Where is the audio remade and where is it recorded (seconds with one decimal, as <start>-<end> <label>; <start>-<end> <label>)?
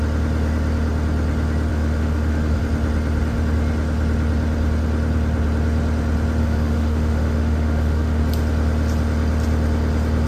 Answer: 0.0-1.7 recorded; 1.7-2.6 remade; 2.6-6.4 recorded; 6.4-8.2 remade; 8.2-10.3 recorded